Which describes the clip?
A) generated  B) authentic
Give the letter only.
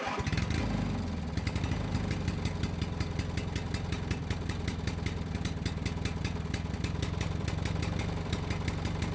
B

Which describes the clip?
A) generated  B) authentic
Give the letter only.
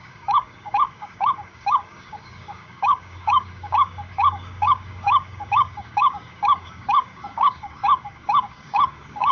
A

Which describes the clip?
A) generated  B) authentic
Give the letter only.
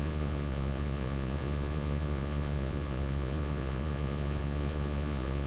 A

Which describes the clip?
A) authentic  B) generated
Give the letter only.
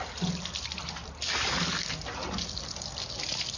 A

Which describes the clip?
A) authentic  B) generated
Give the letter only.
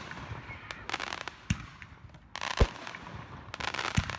A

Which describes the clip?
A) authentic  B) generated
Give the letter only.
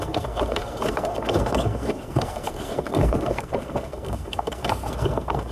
B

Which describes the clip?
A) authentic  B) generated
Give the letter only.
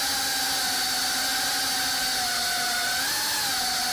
A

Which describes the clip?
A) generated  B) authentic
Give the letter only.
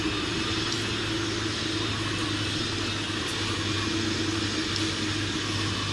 B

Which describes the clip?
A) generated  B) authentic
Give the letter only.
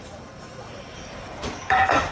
A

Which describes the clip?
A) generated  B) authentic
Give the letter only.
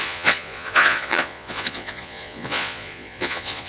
A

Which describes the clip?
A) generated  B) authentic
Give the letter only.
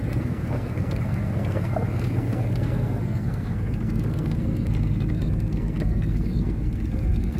A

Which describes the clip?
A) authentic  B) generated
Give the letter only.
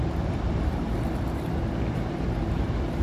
B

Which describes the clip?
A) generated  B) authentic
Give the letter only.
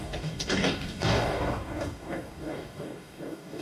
A